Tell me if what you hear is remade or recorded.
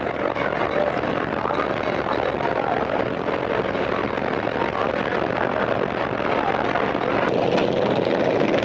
recorded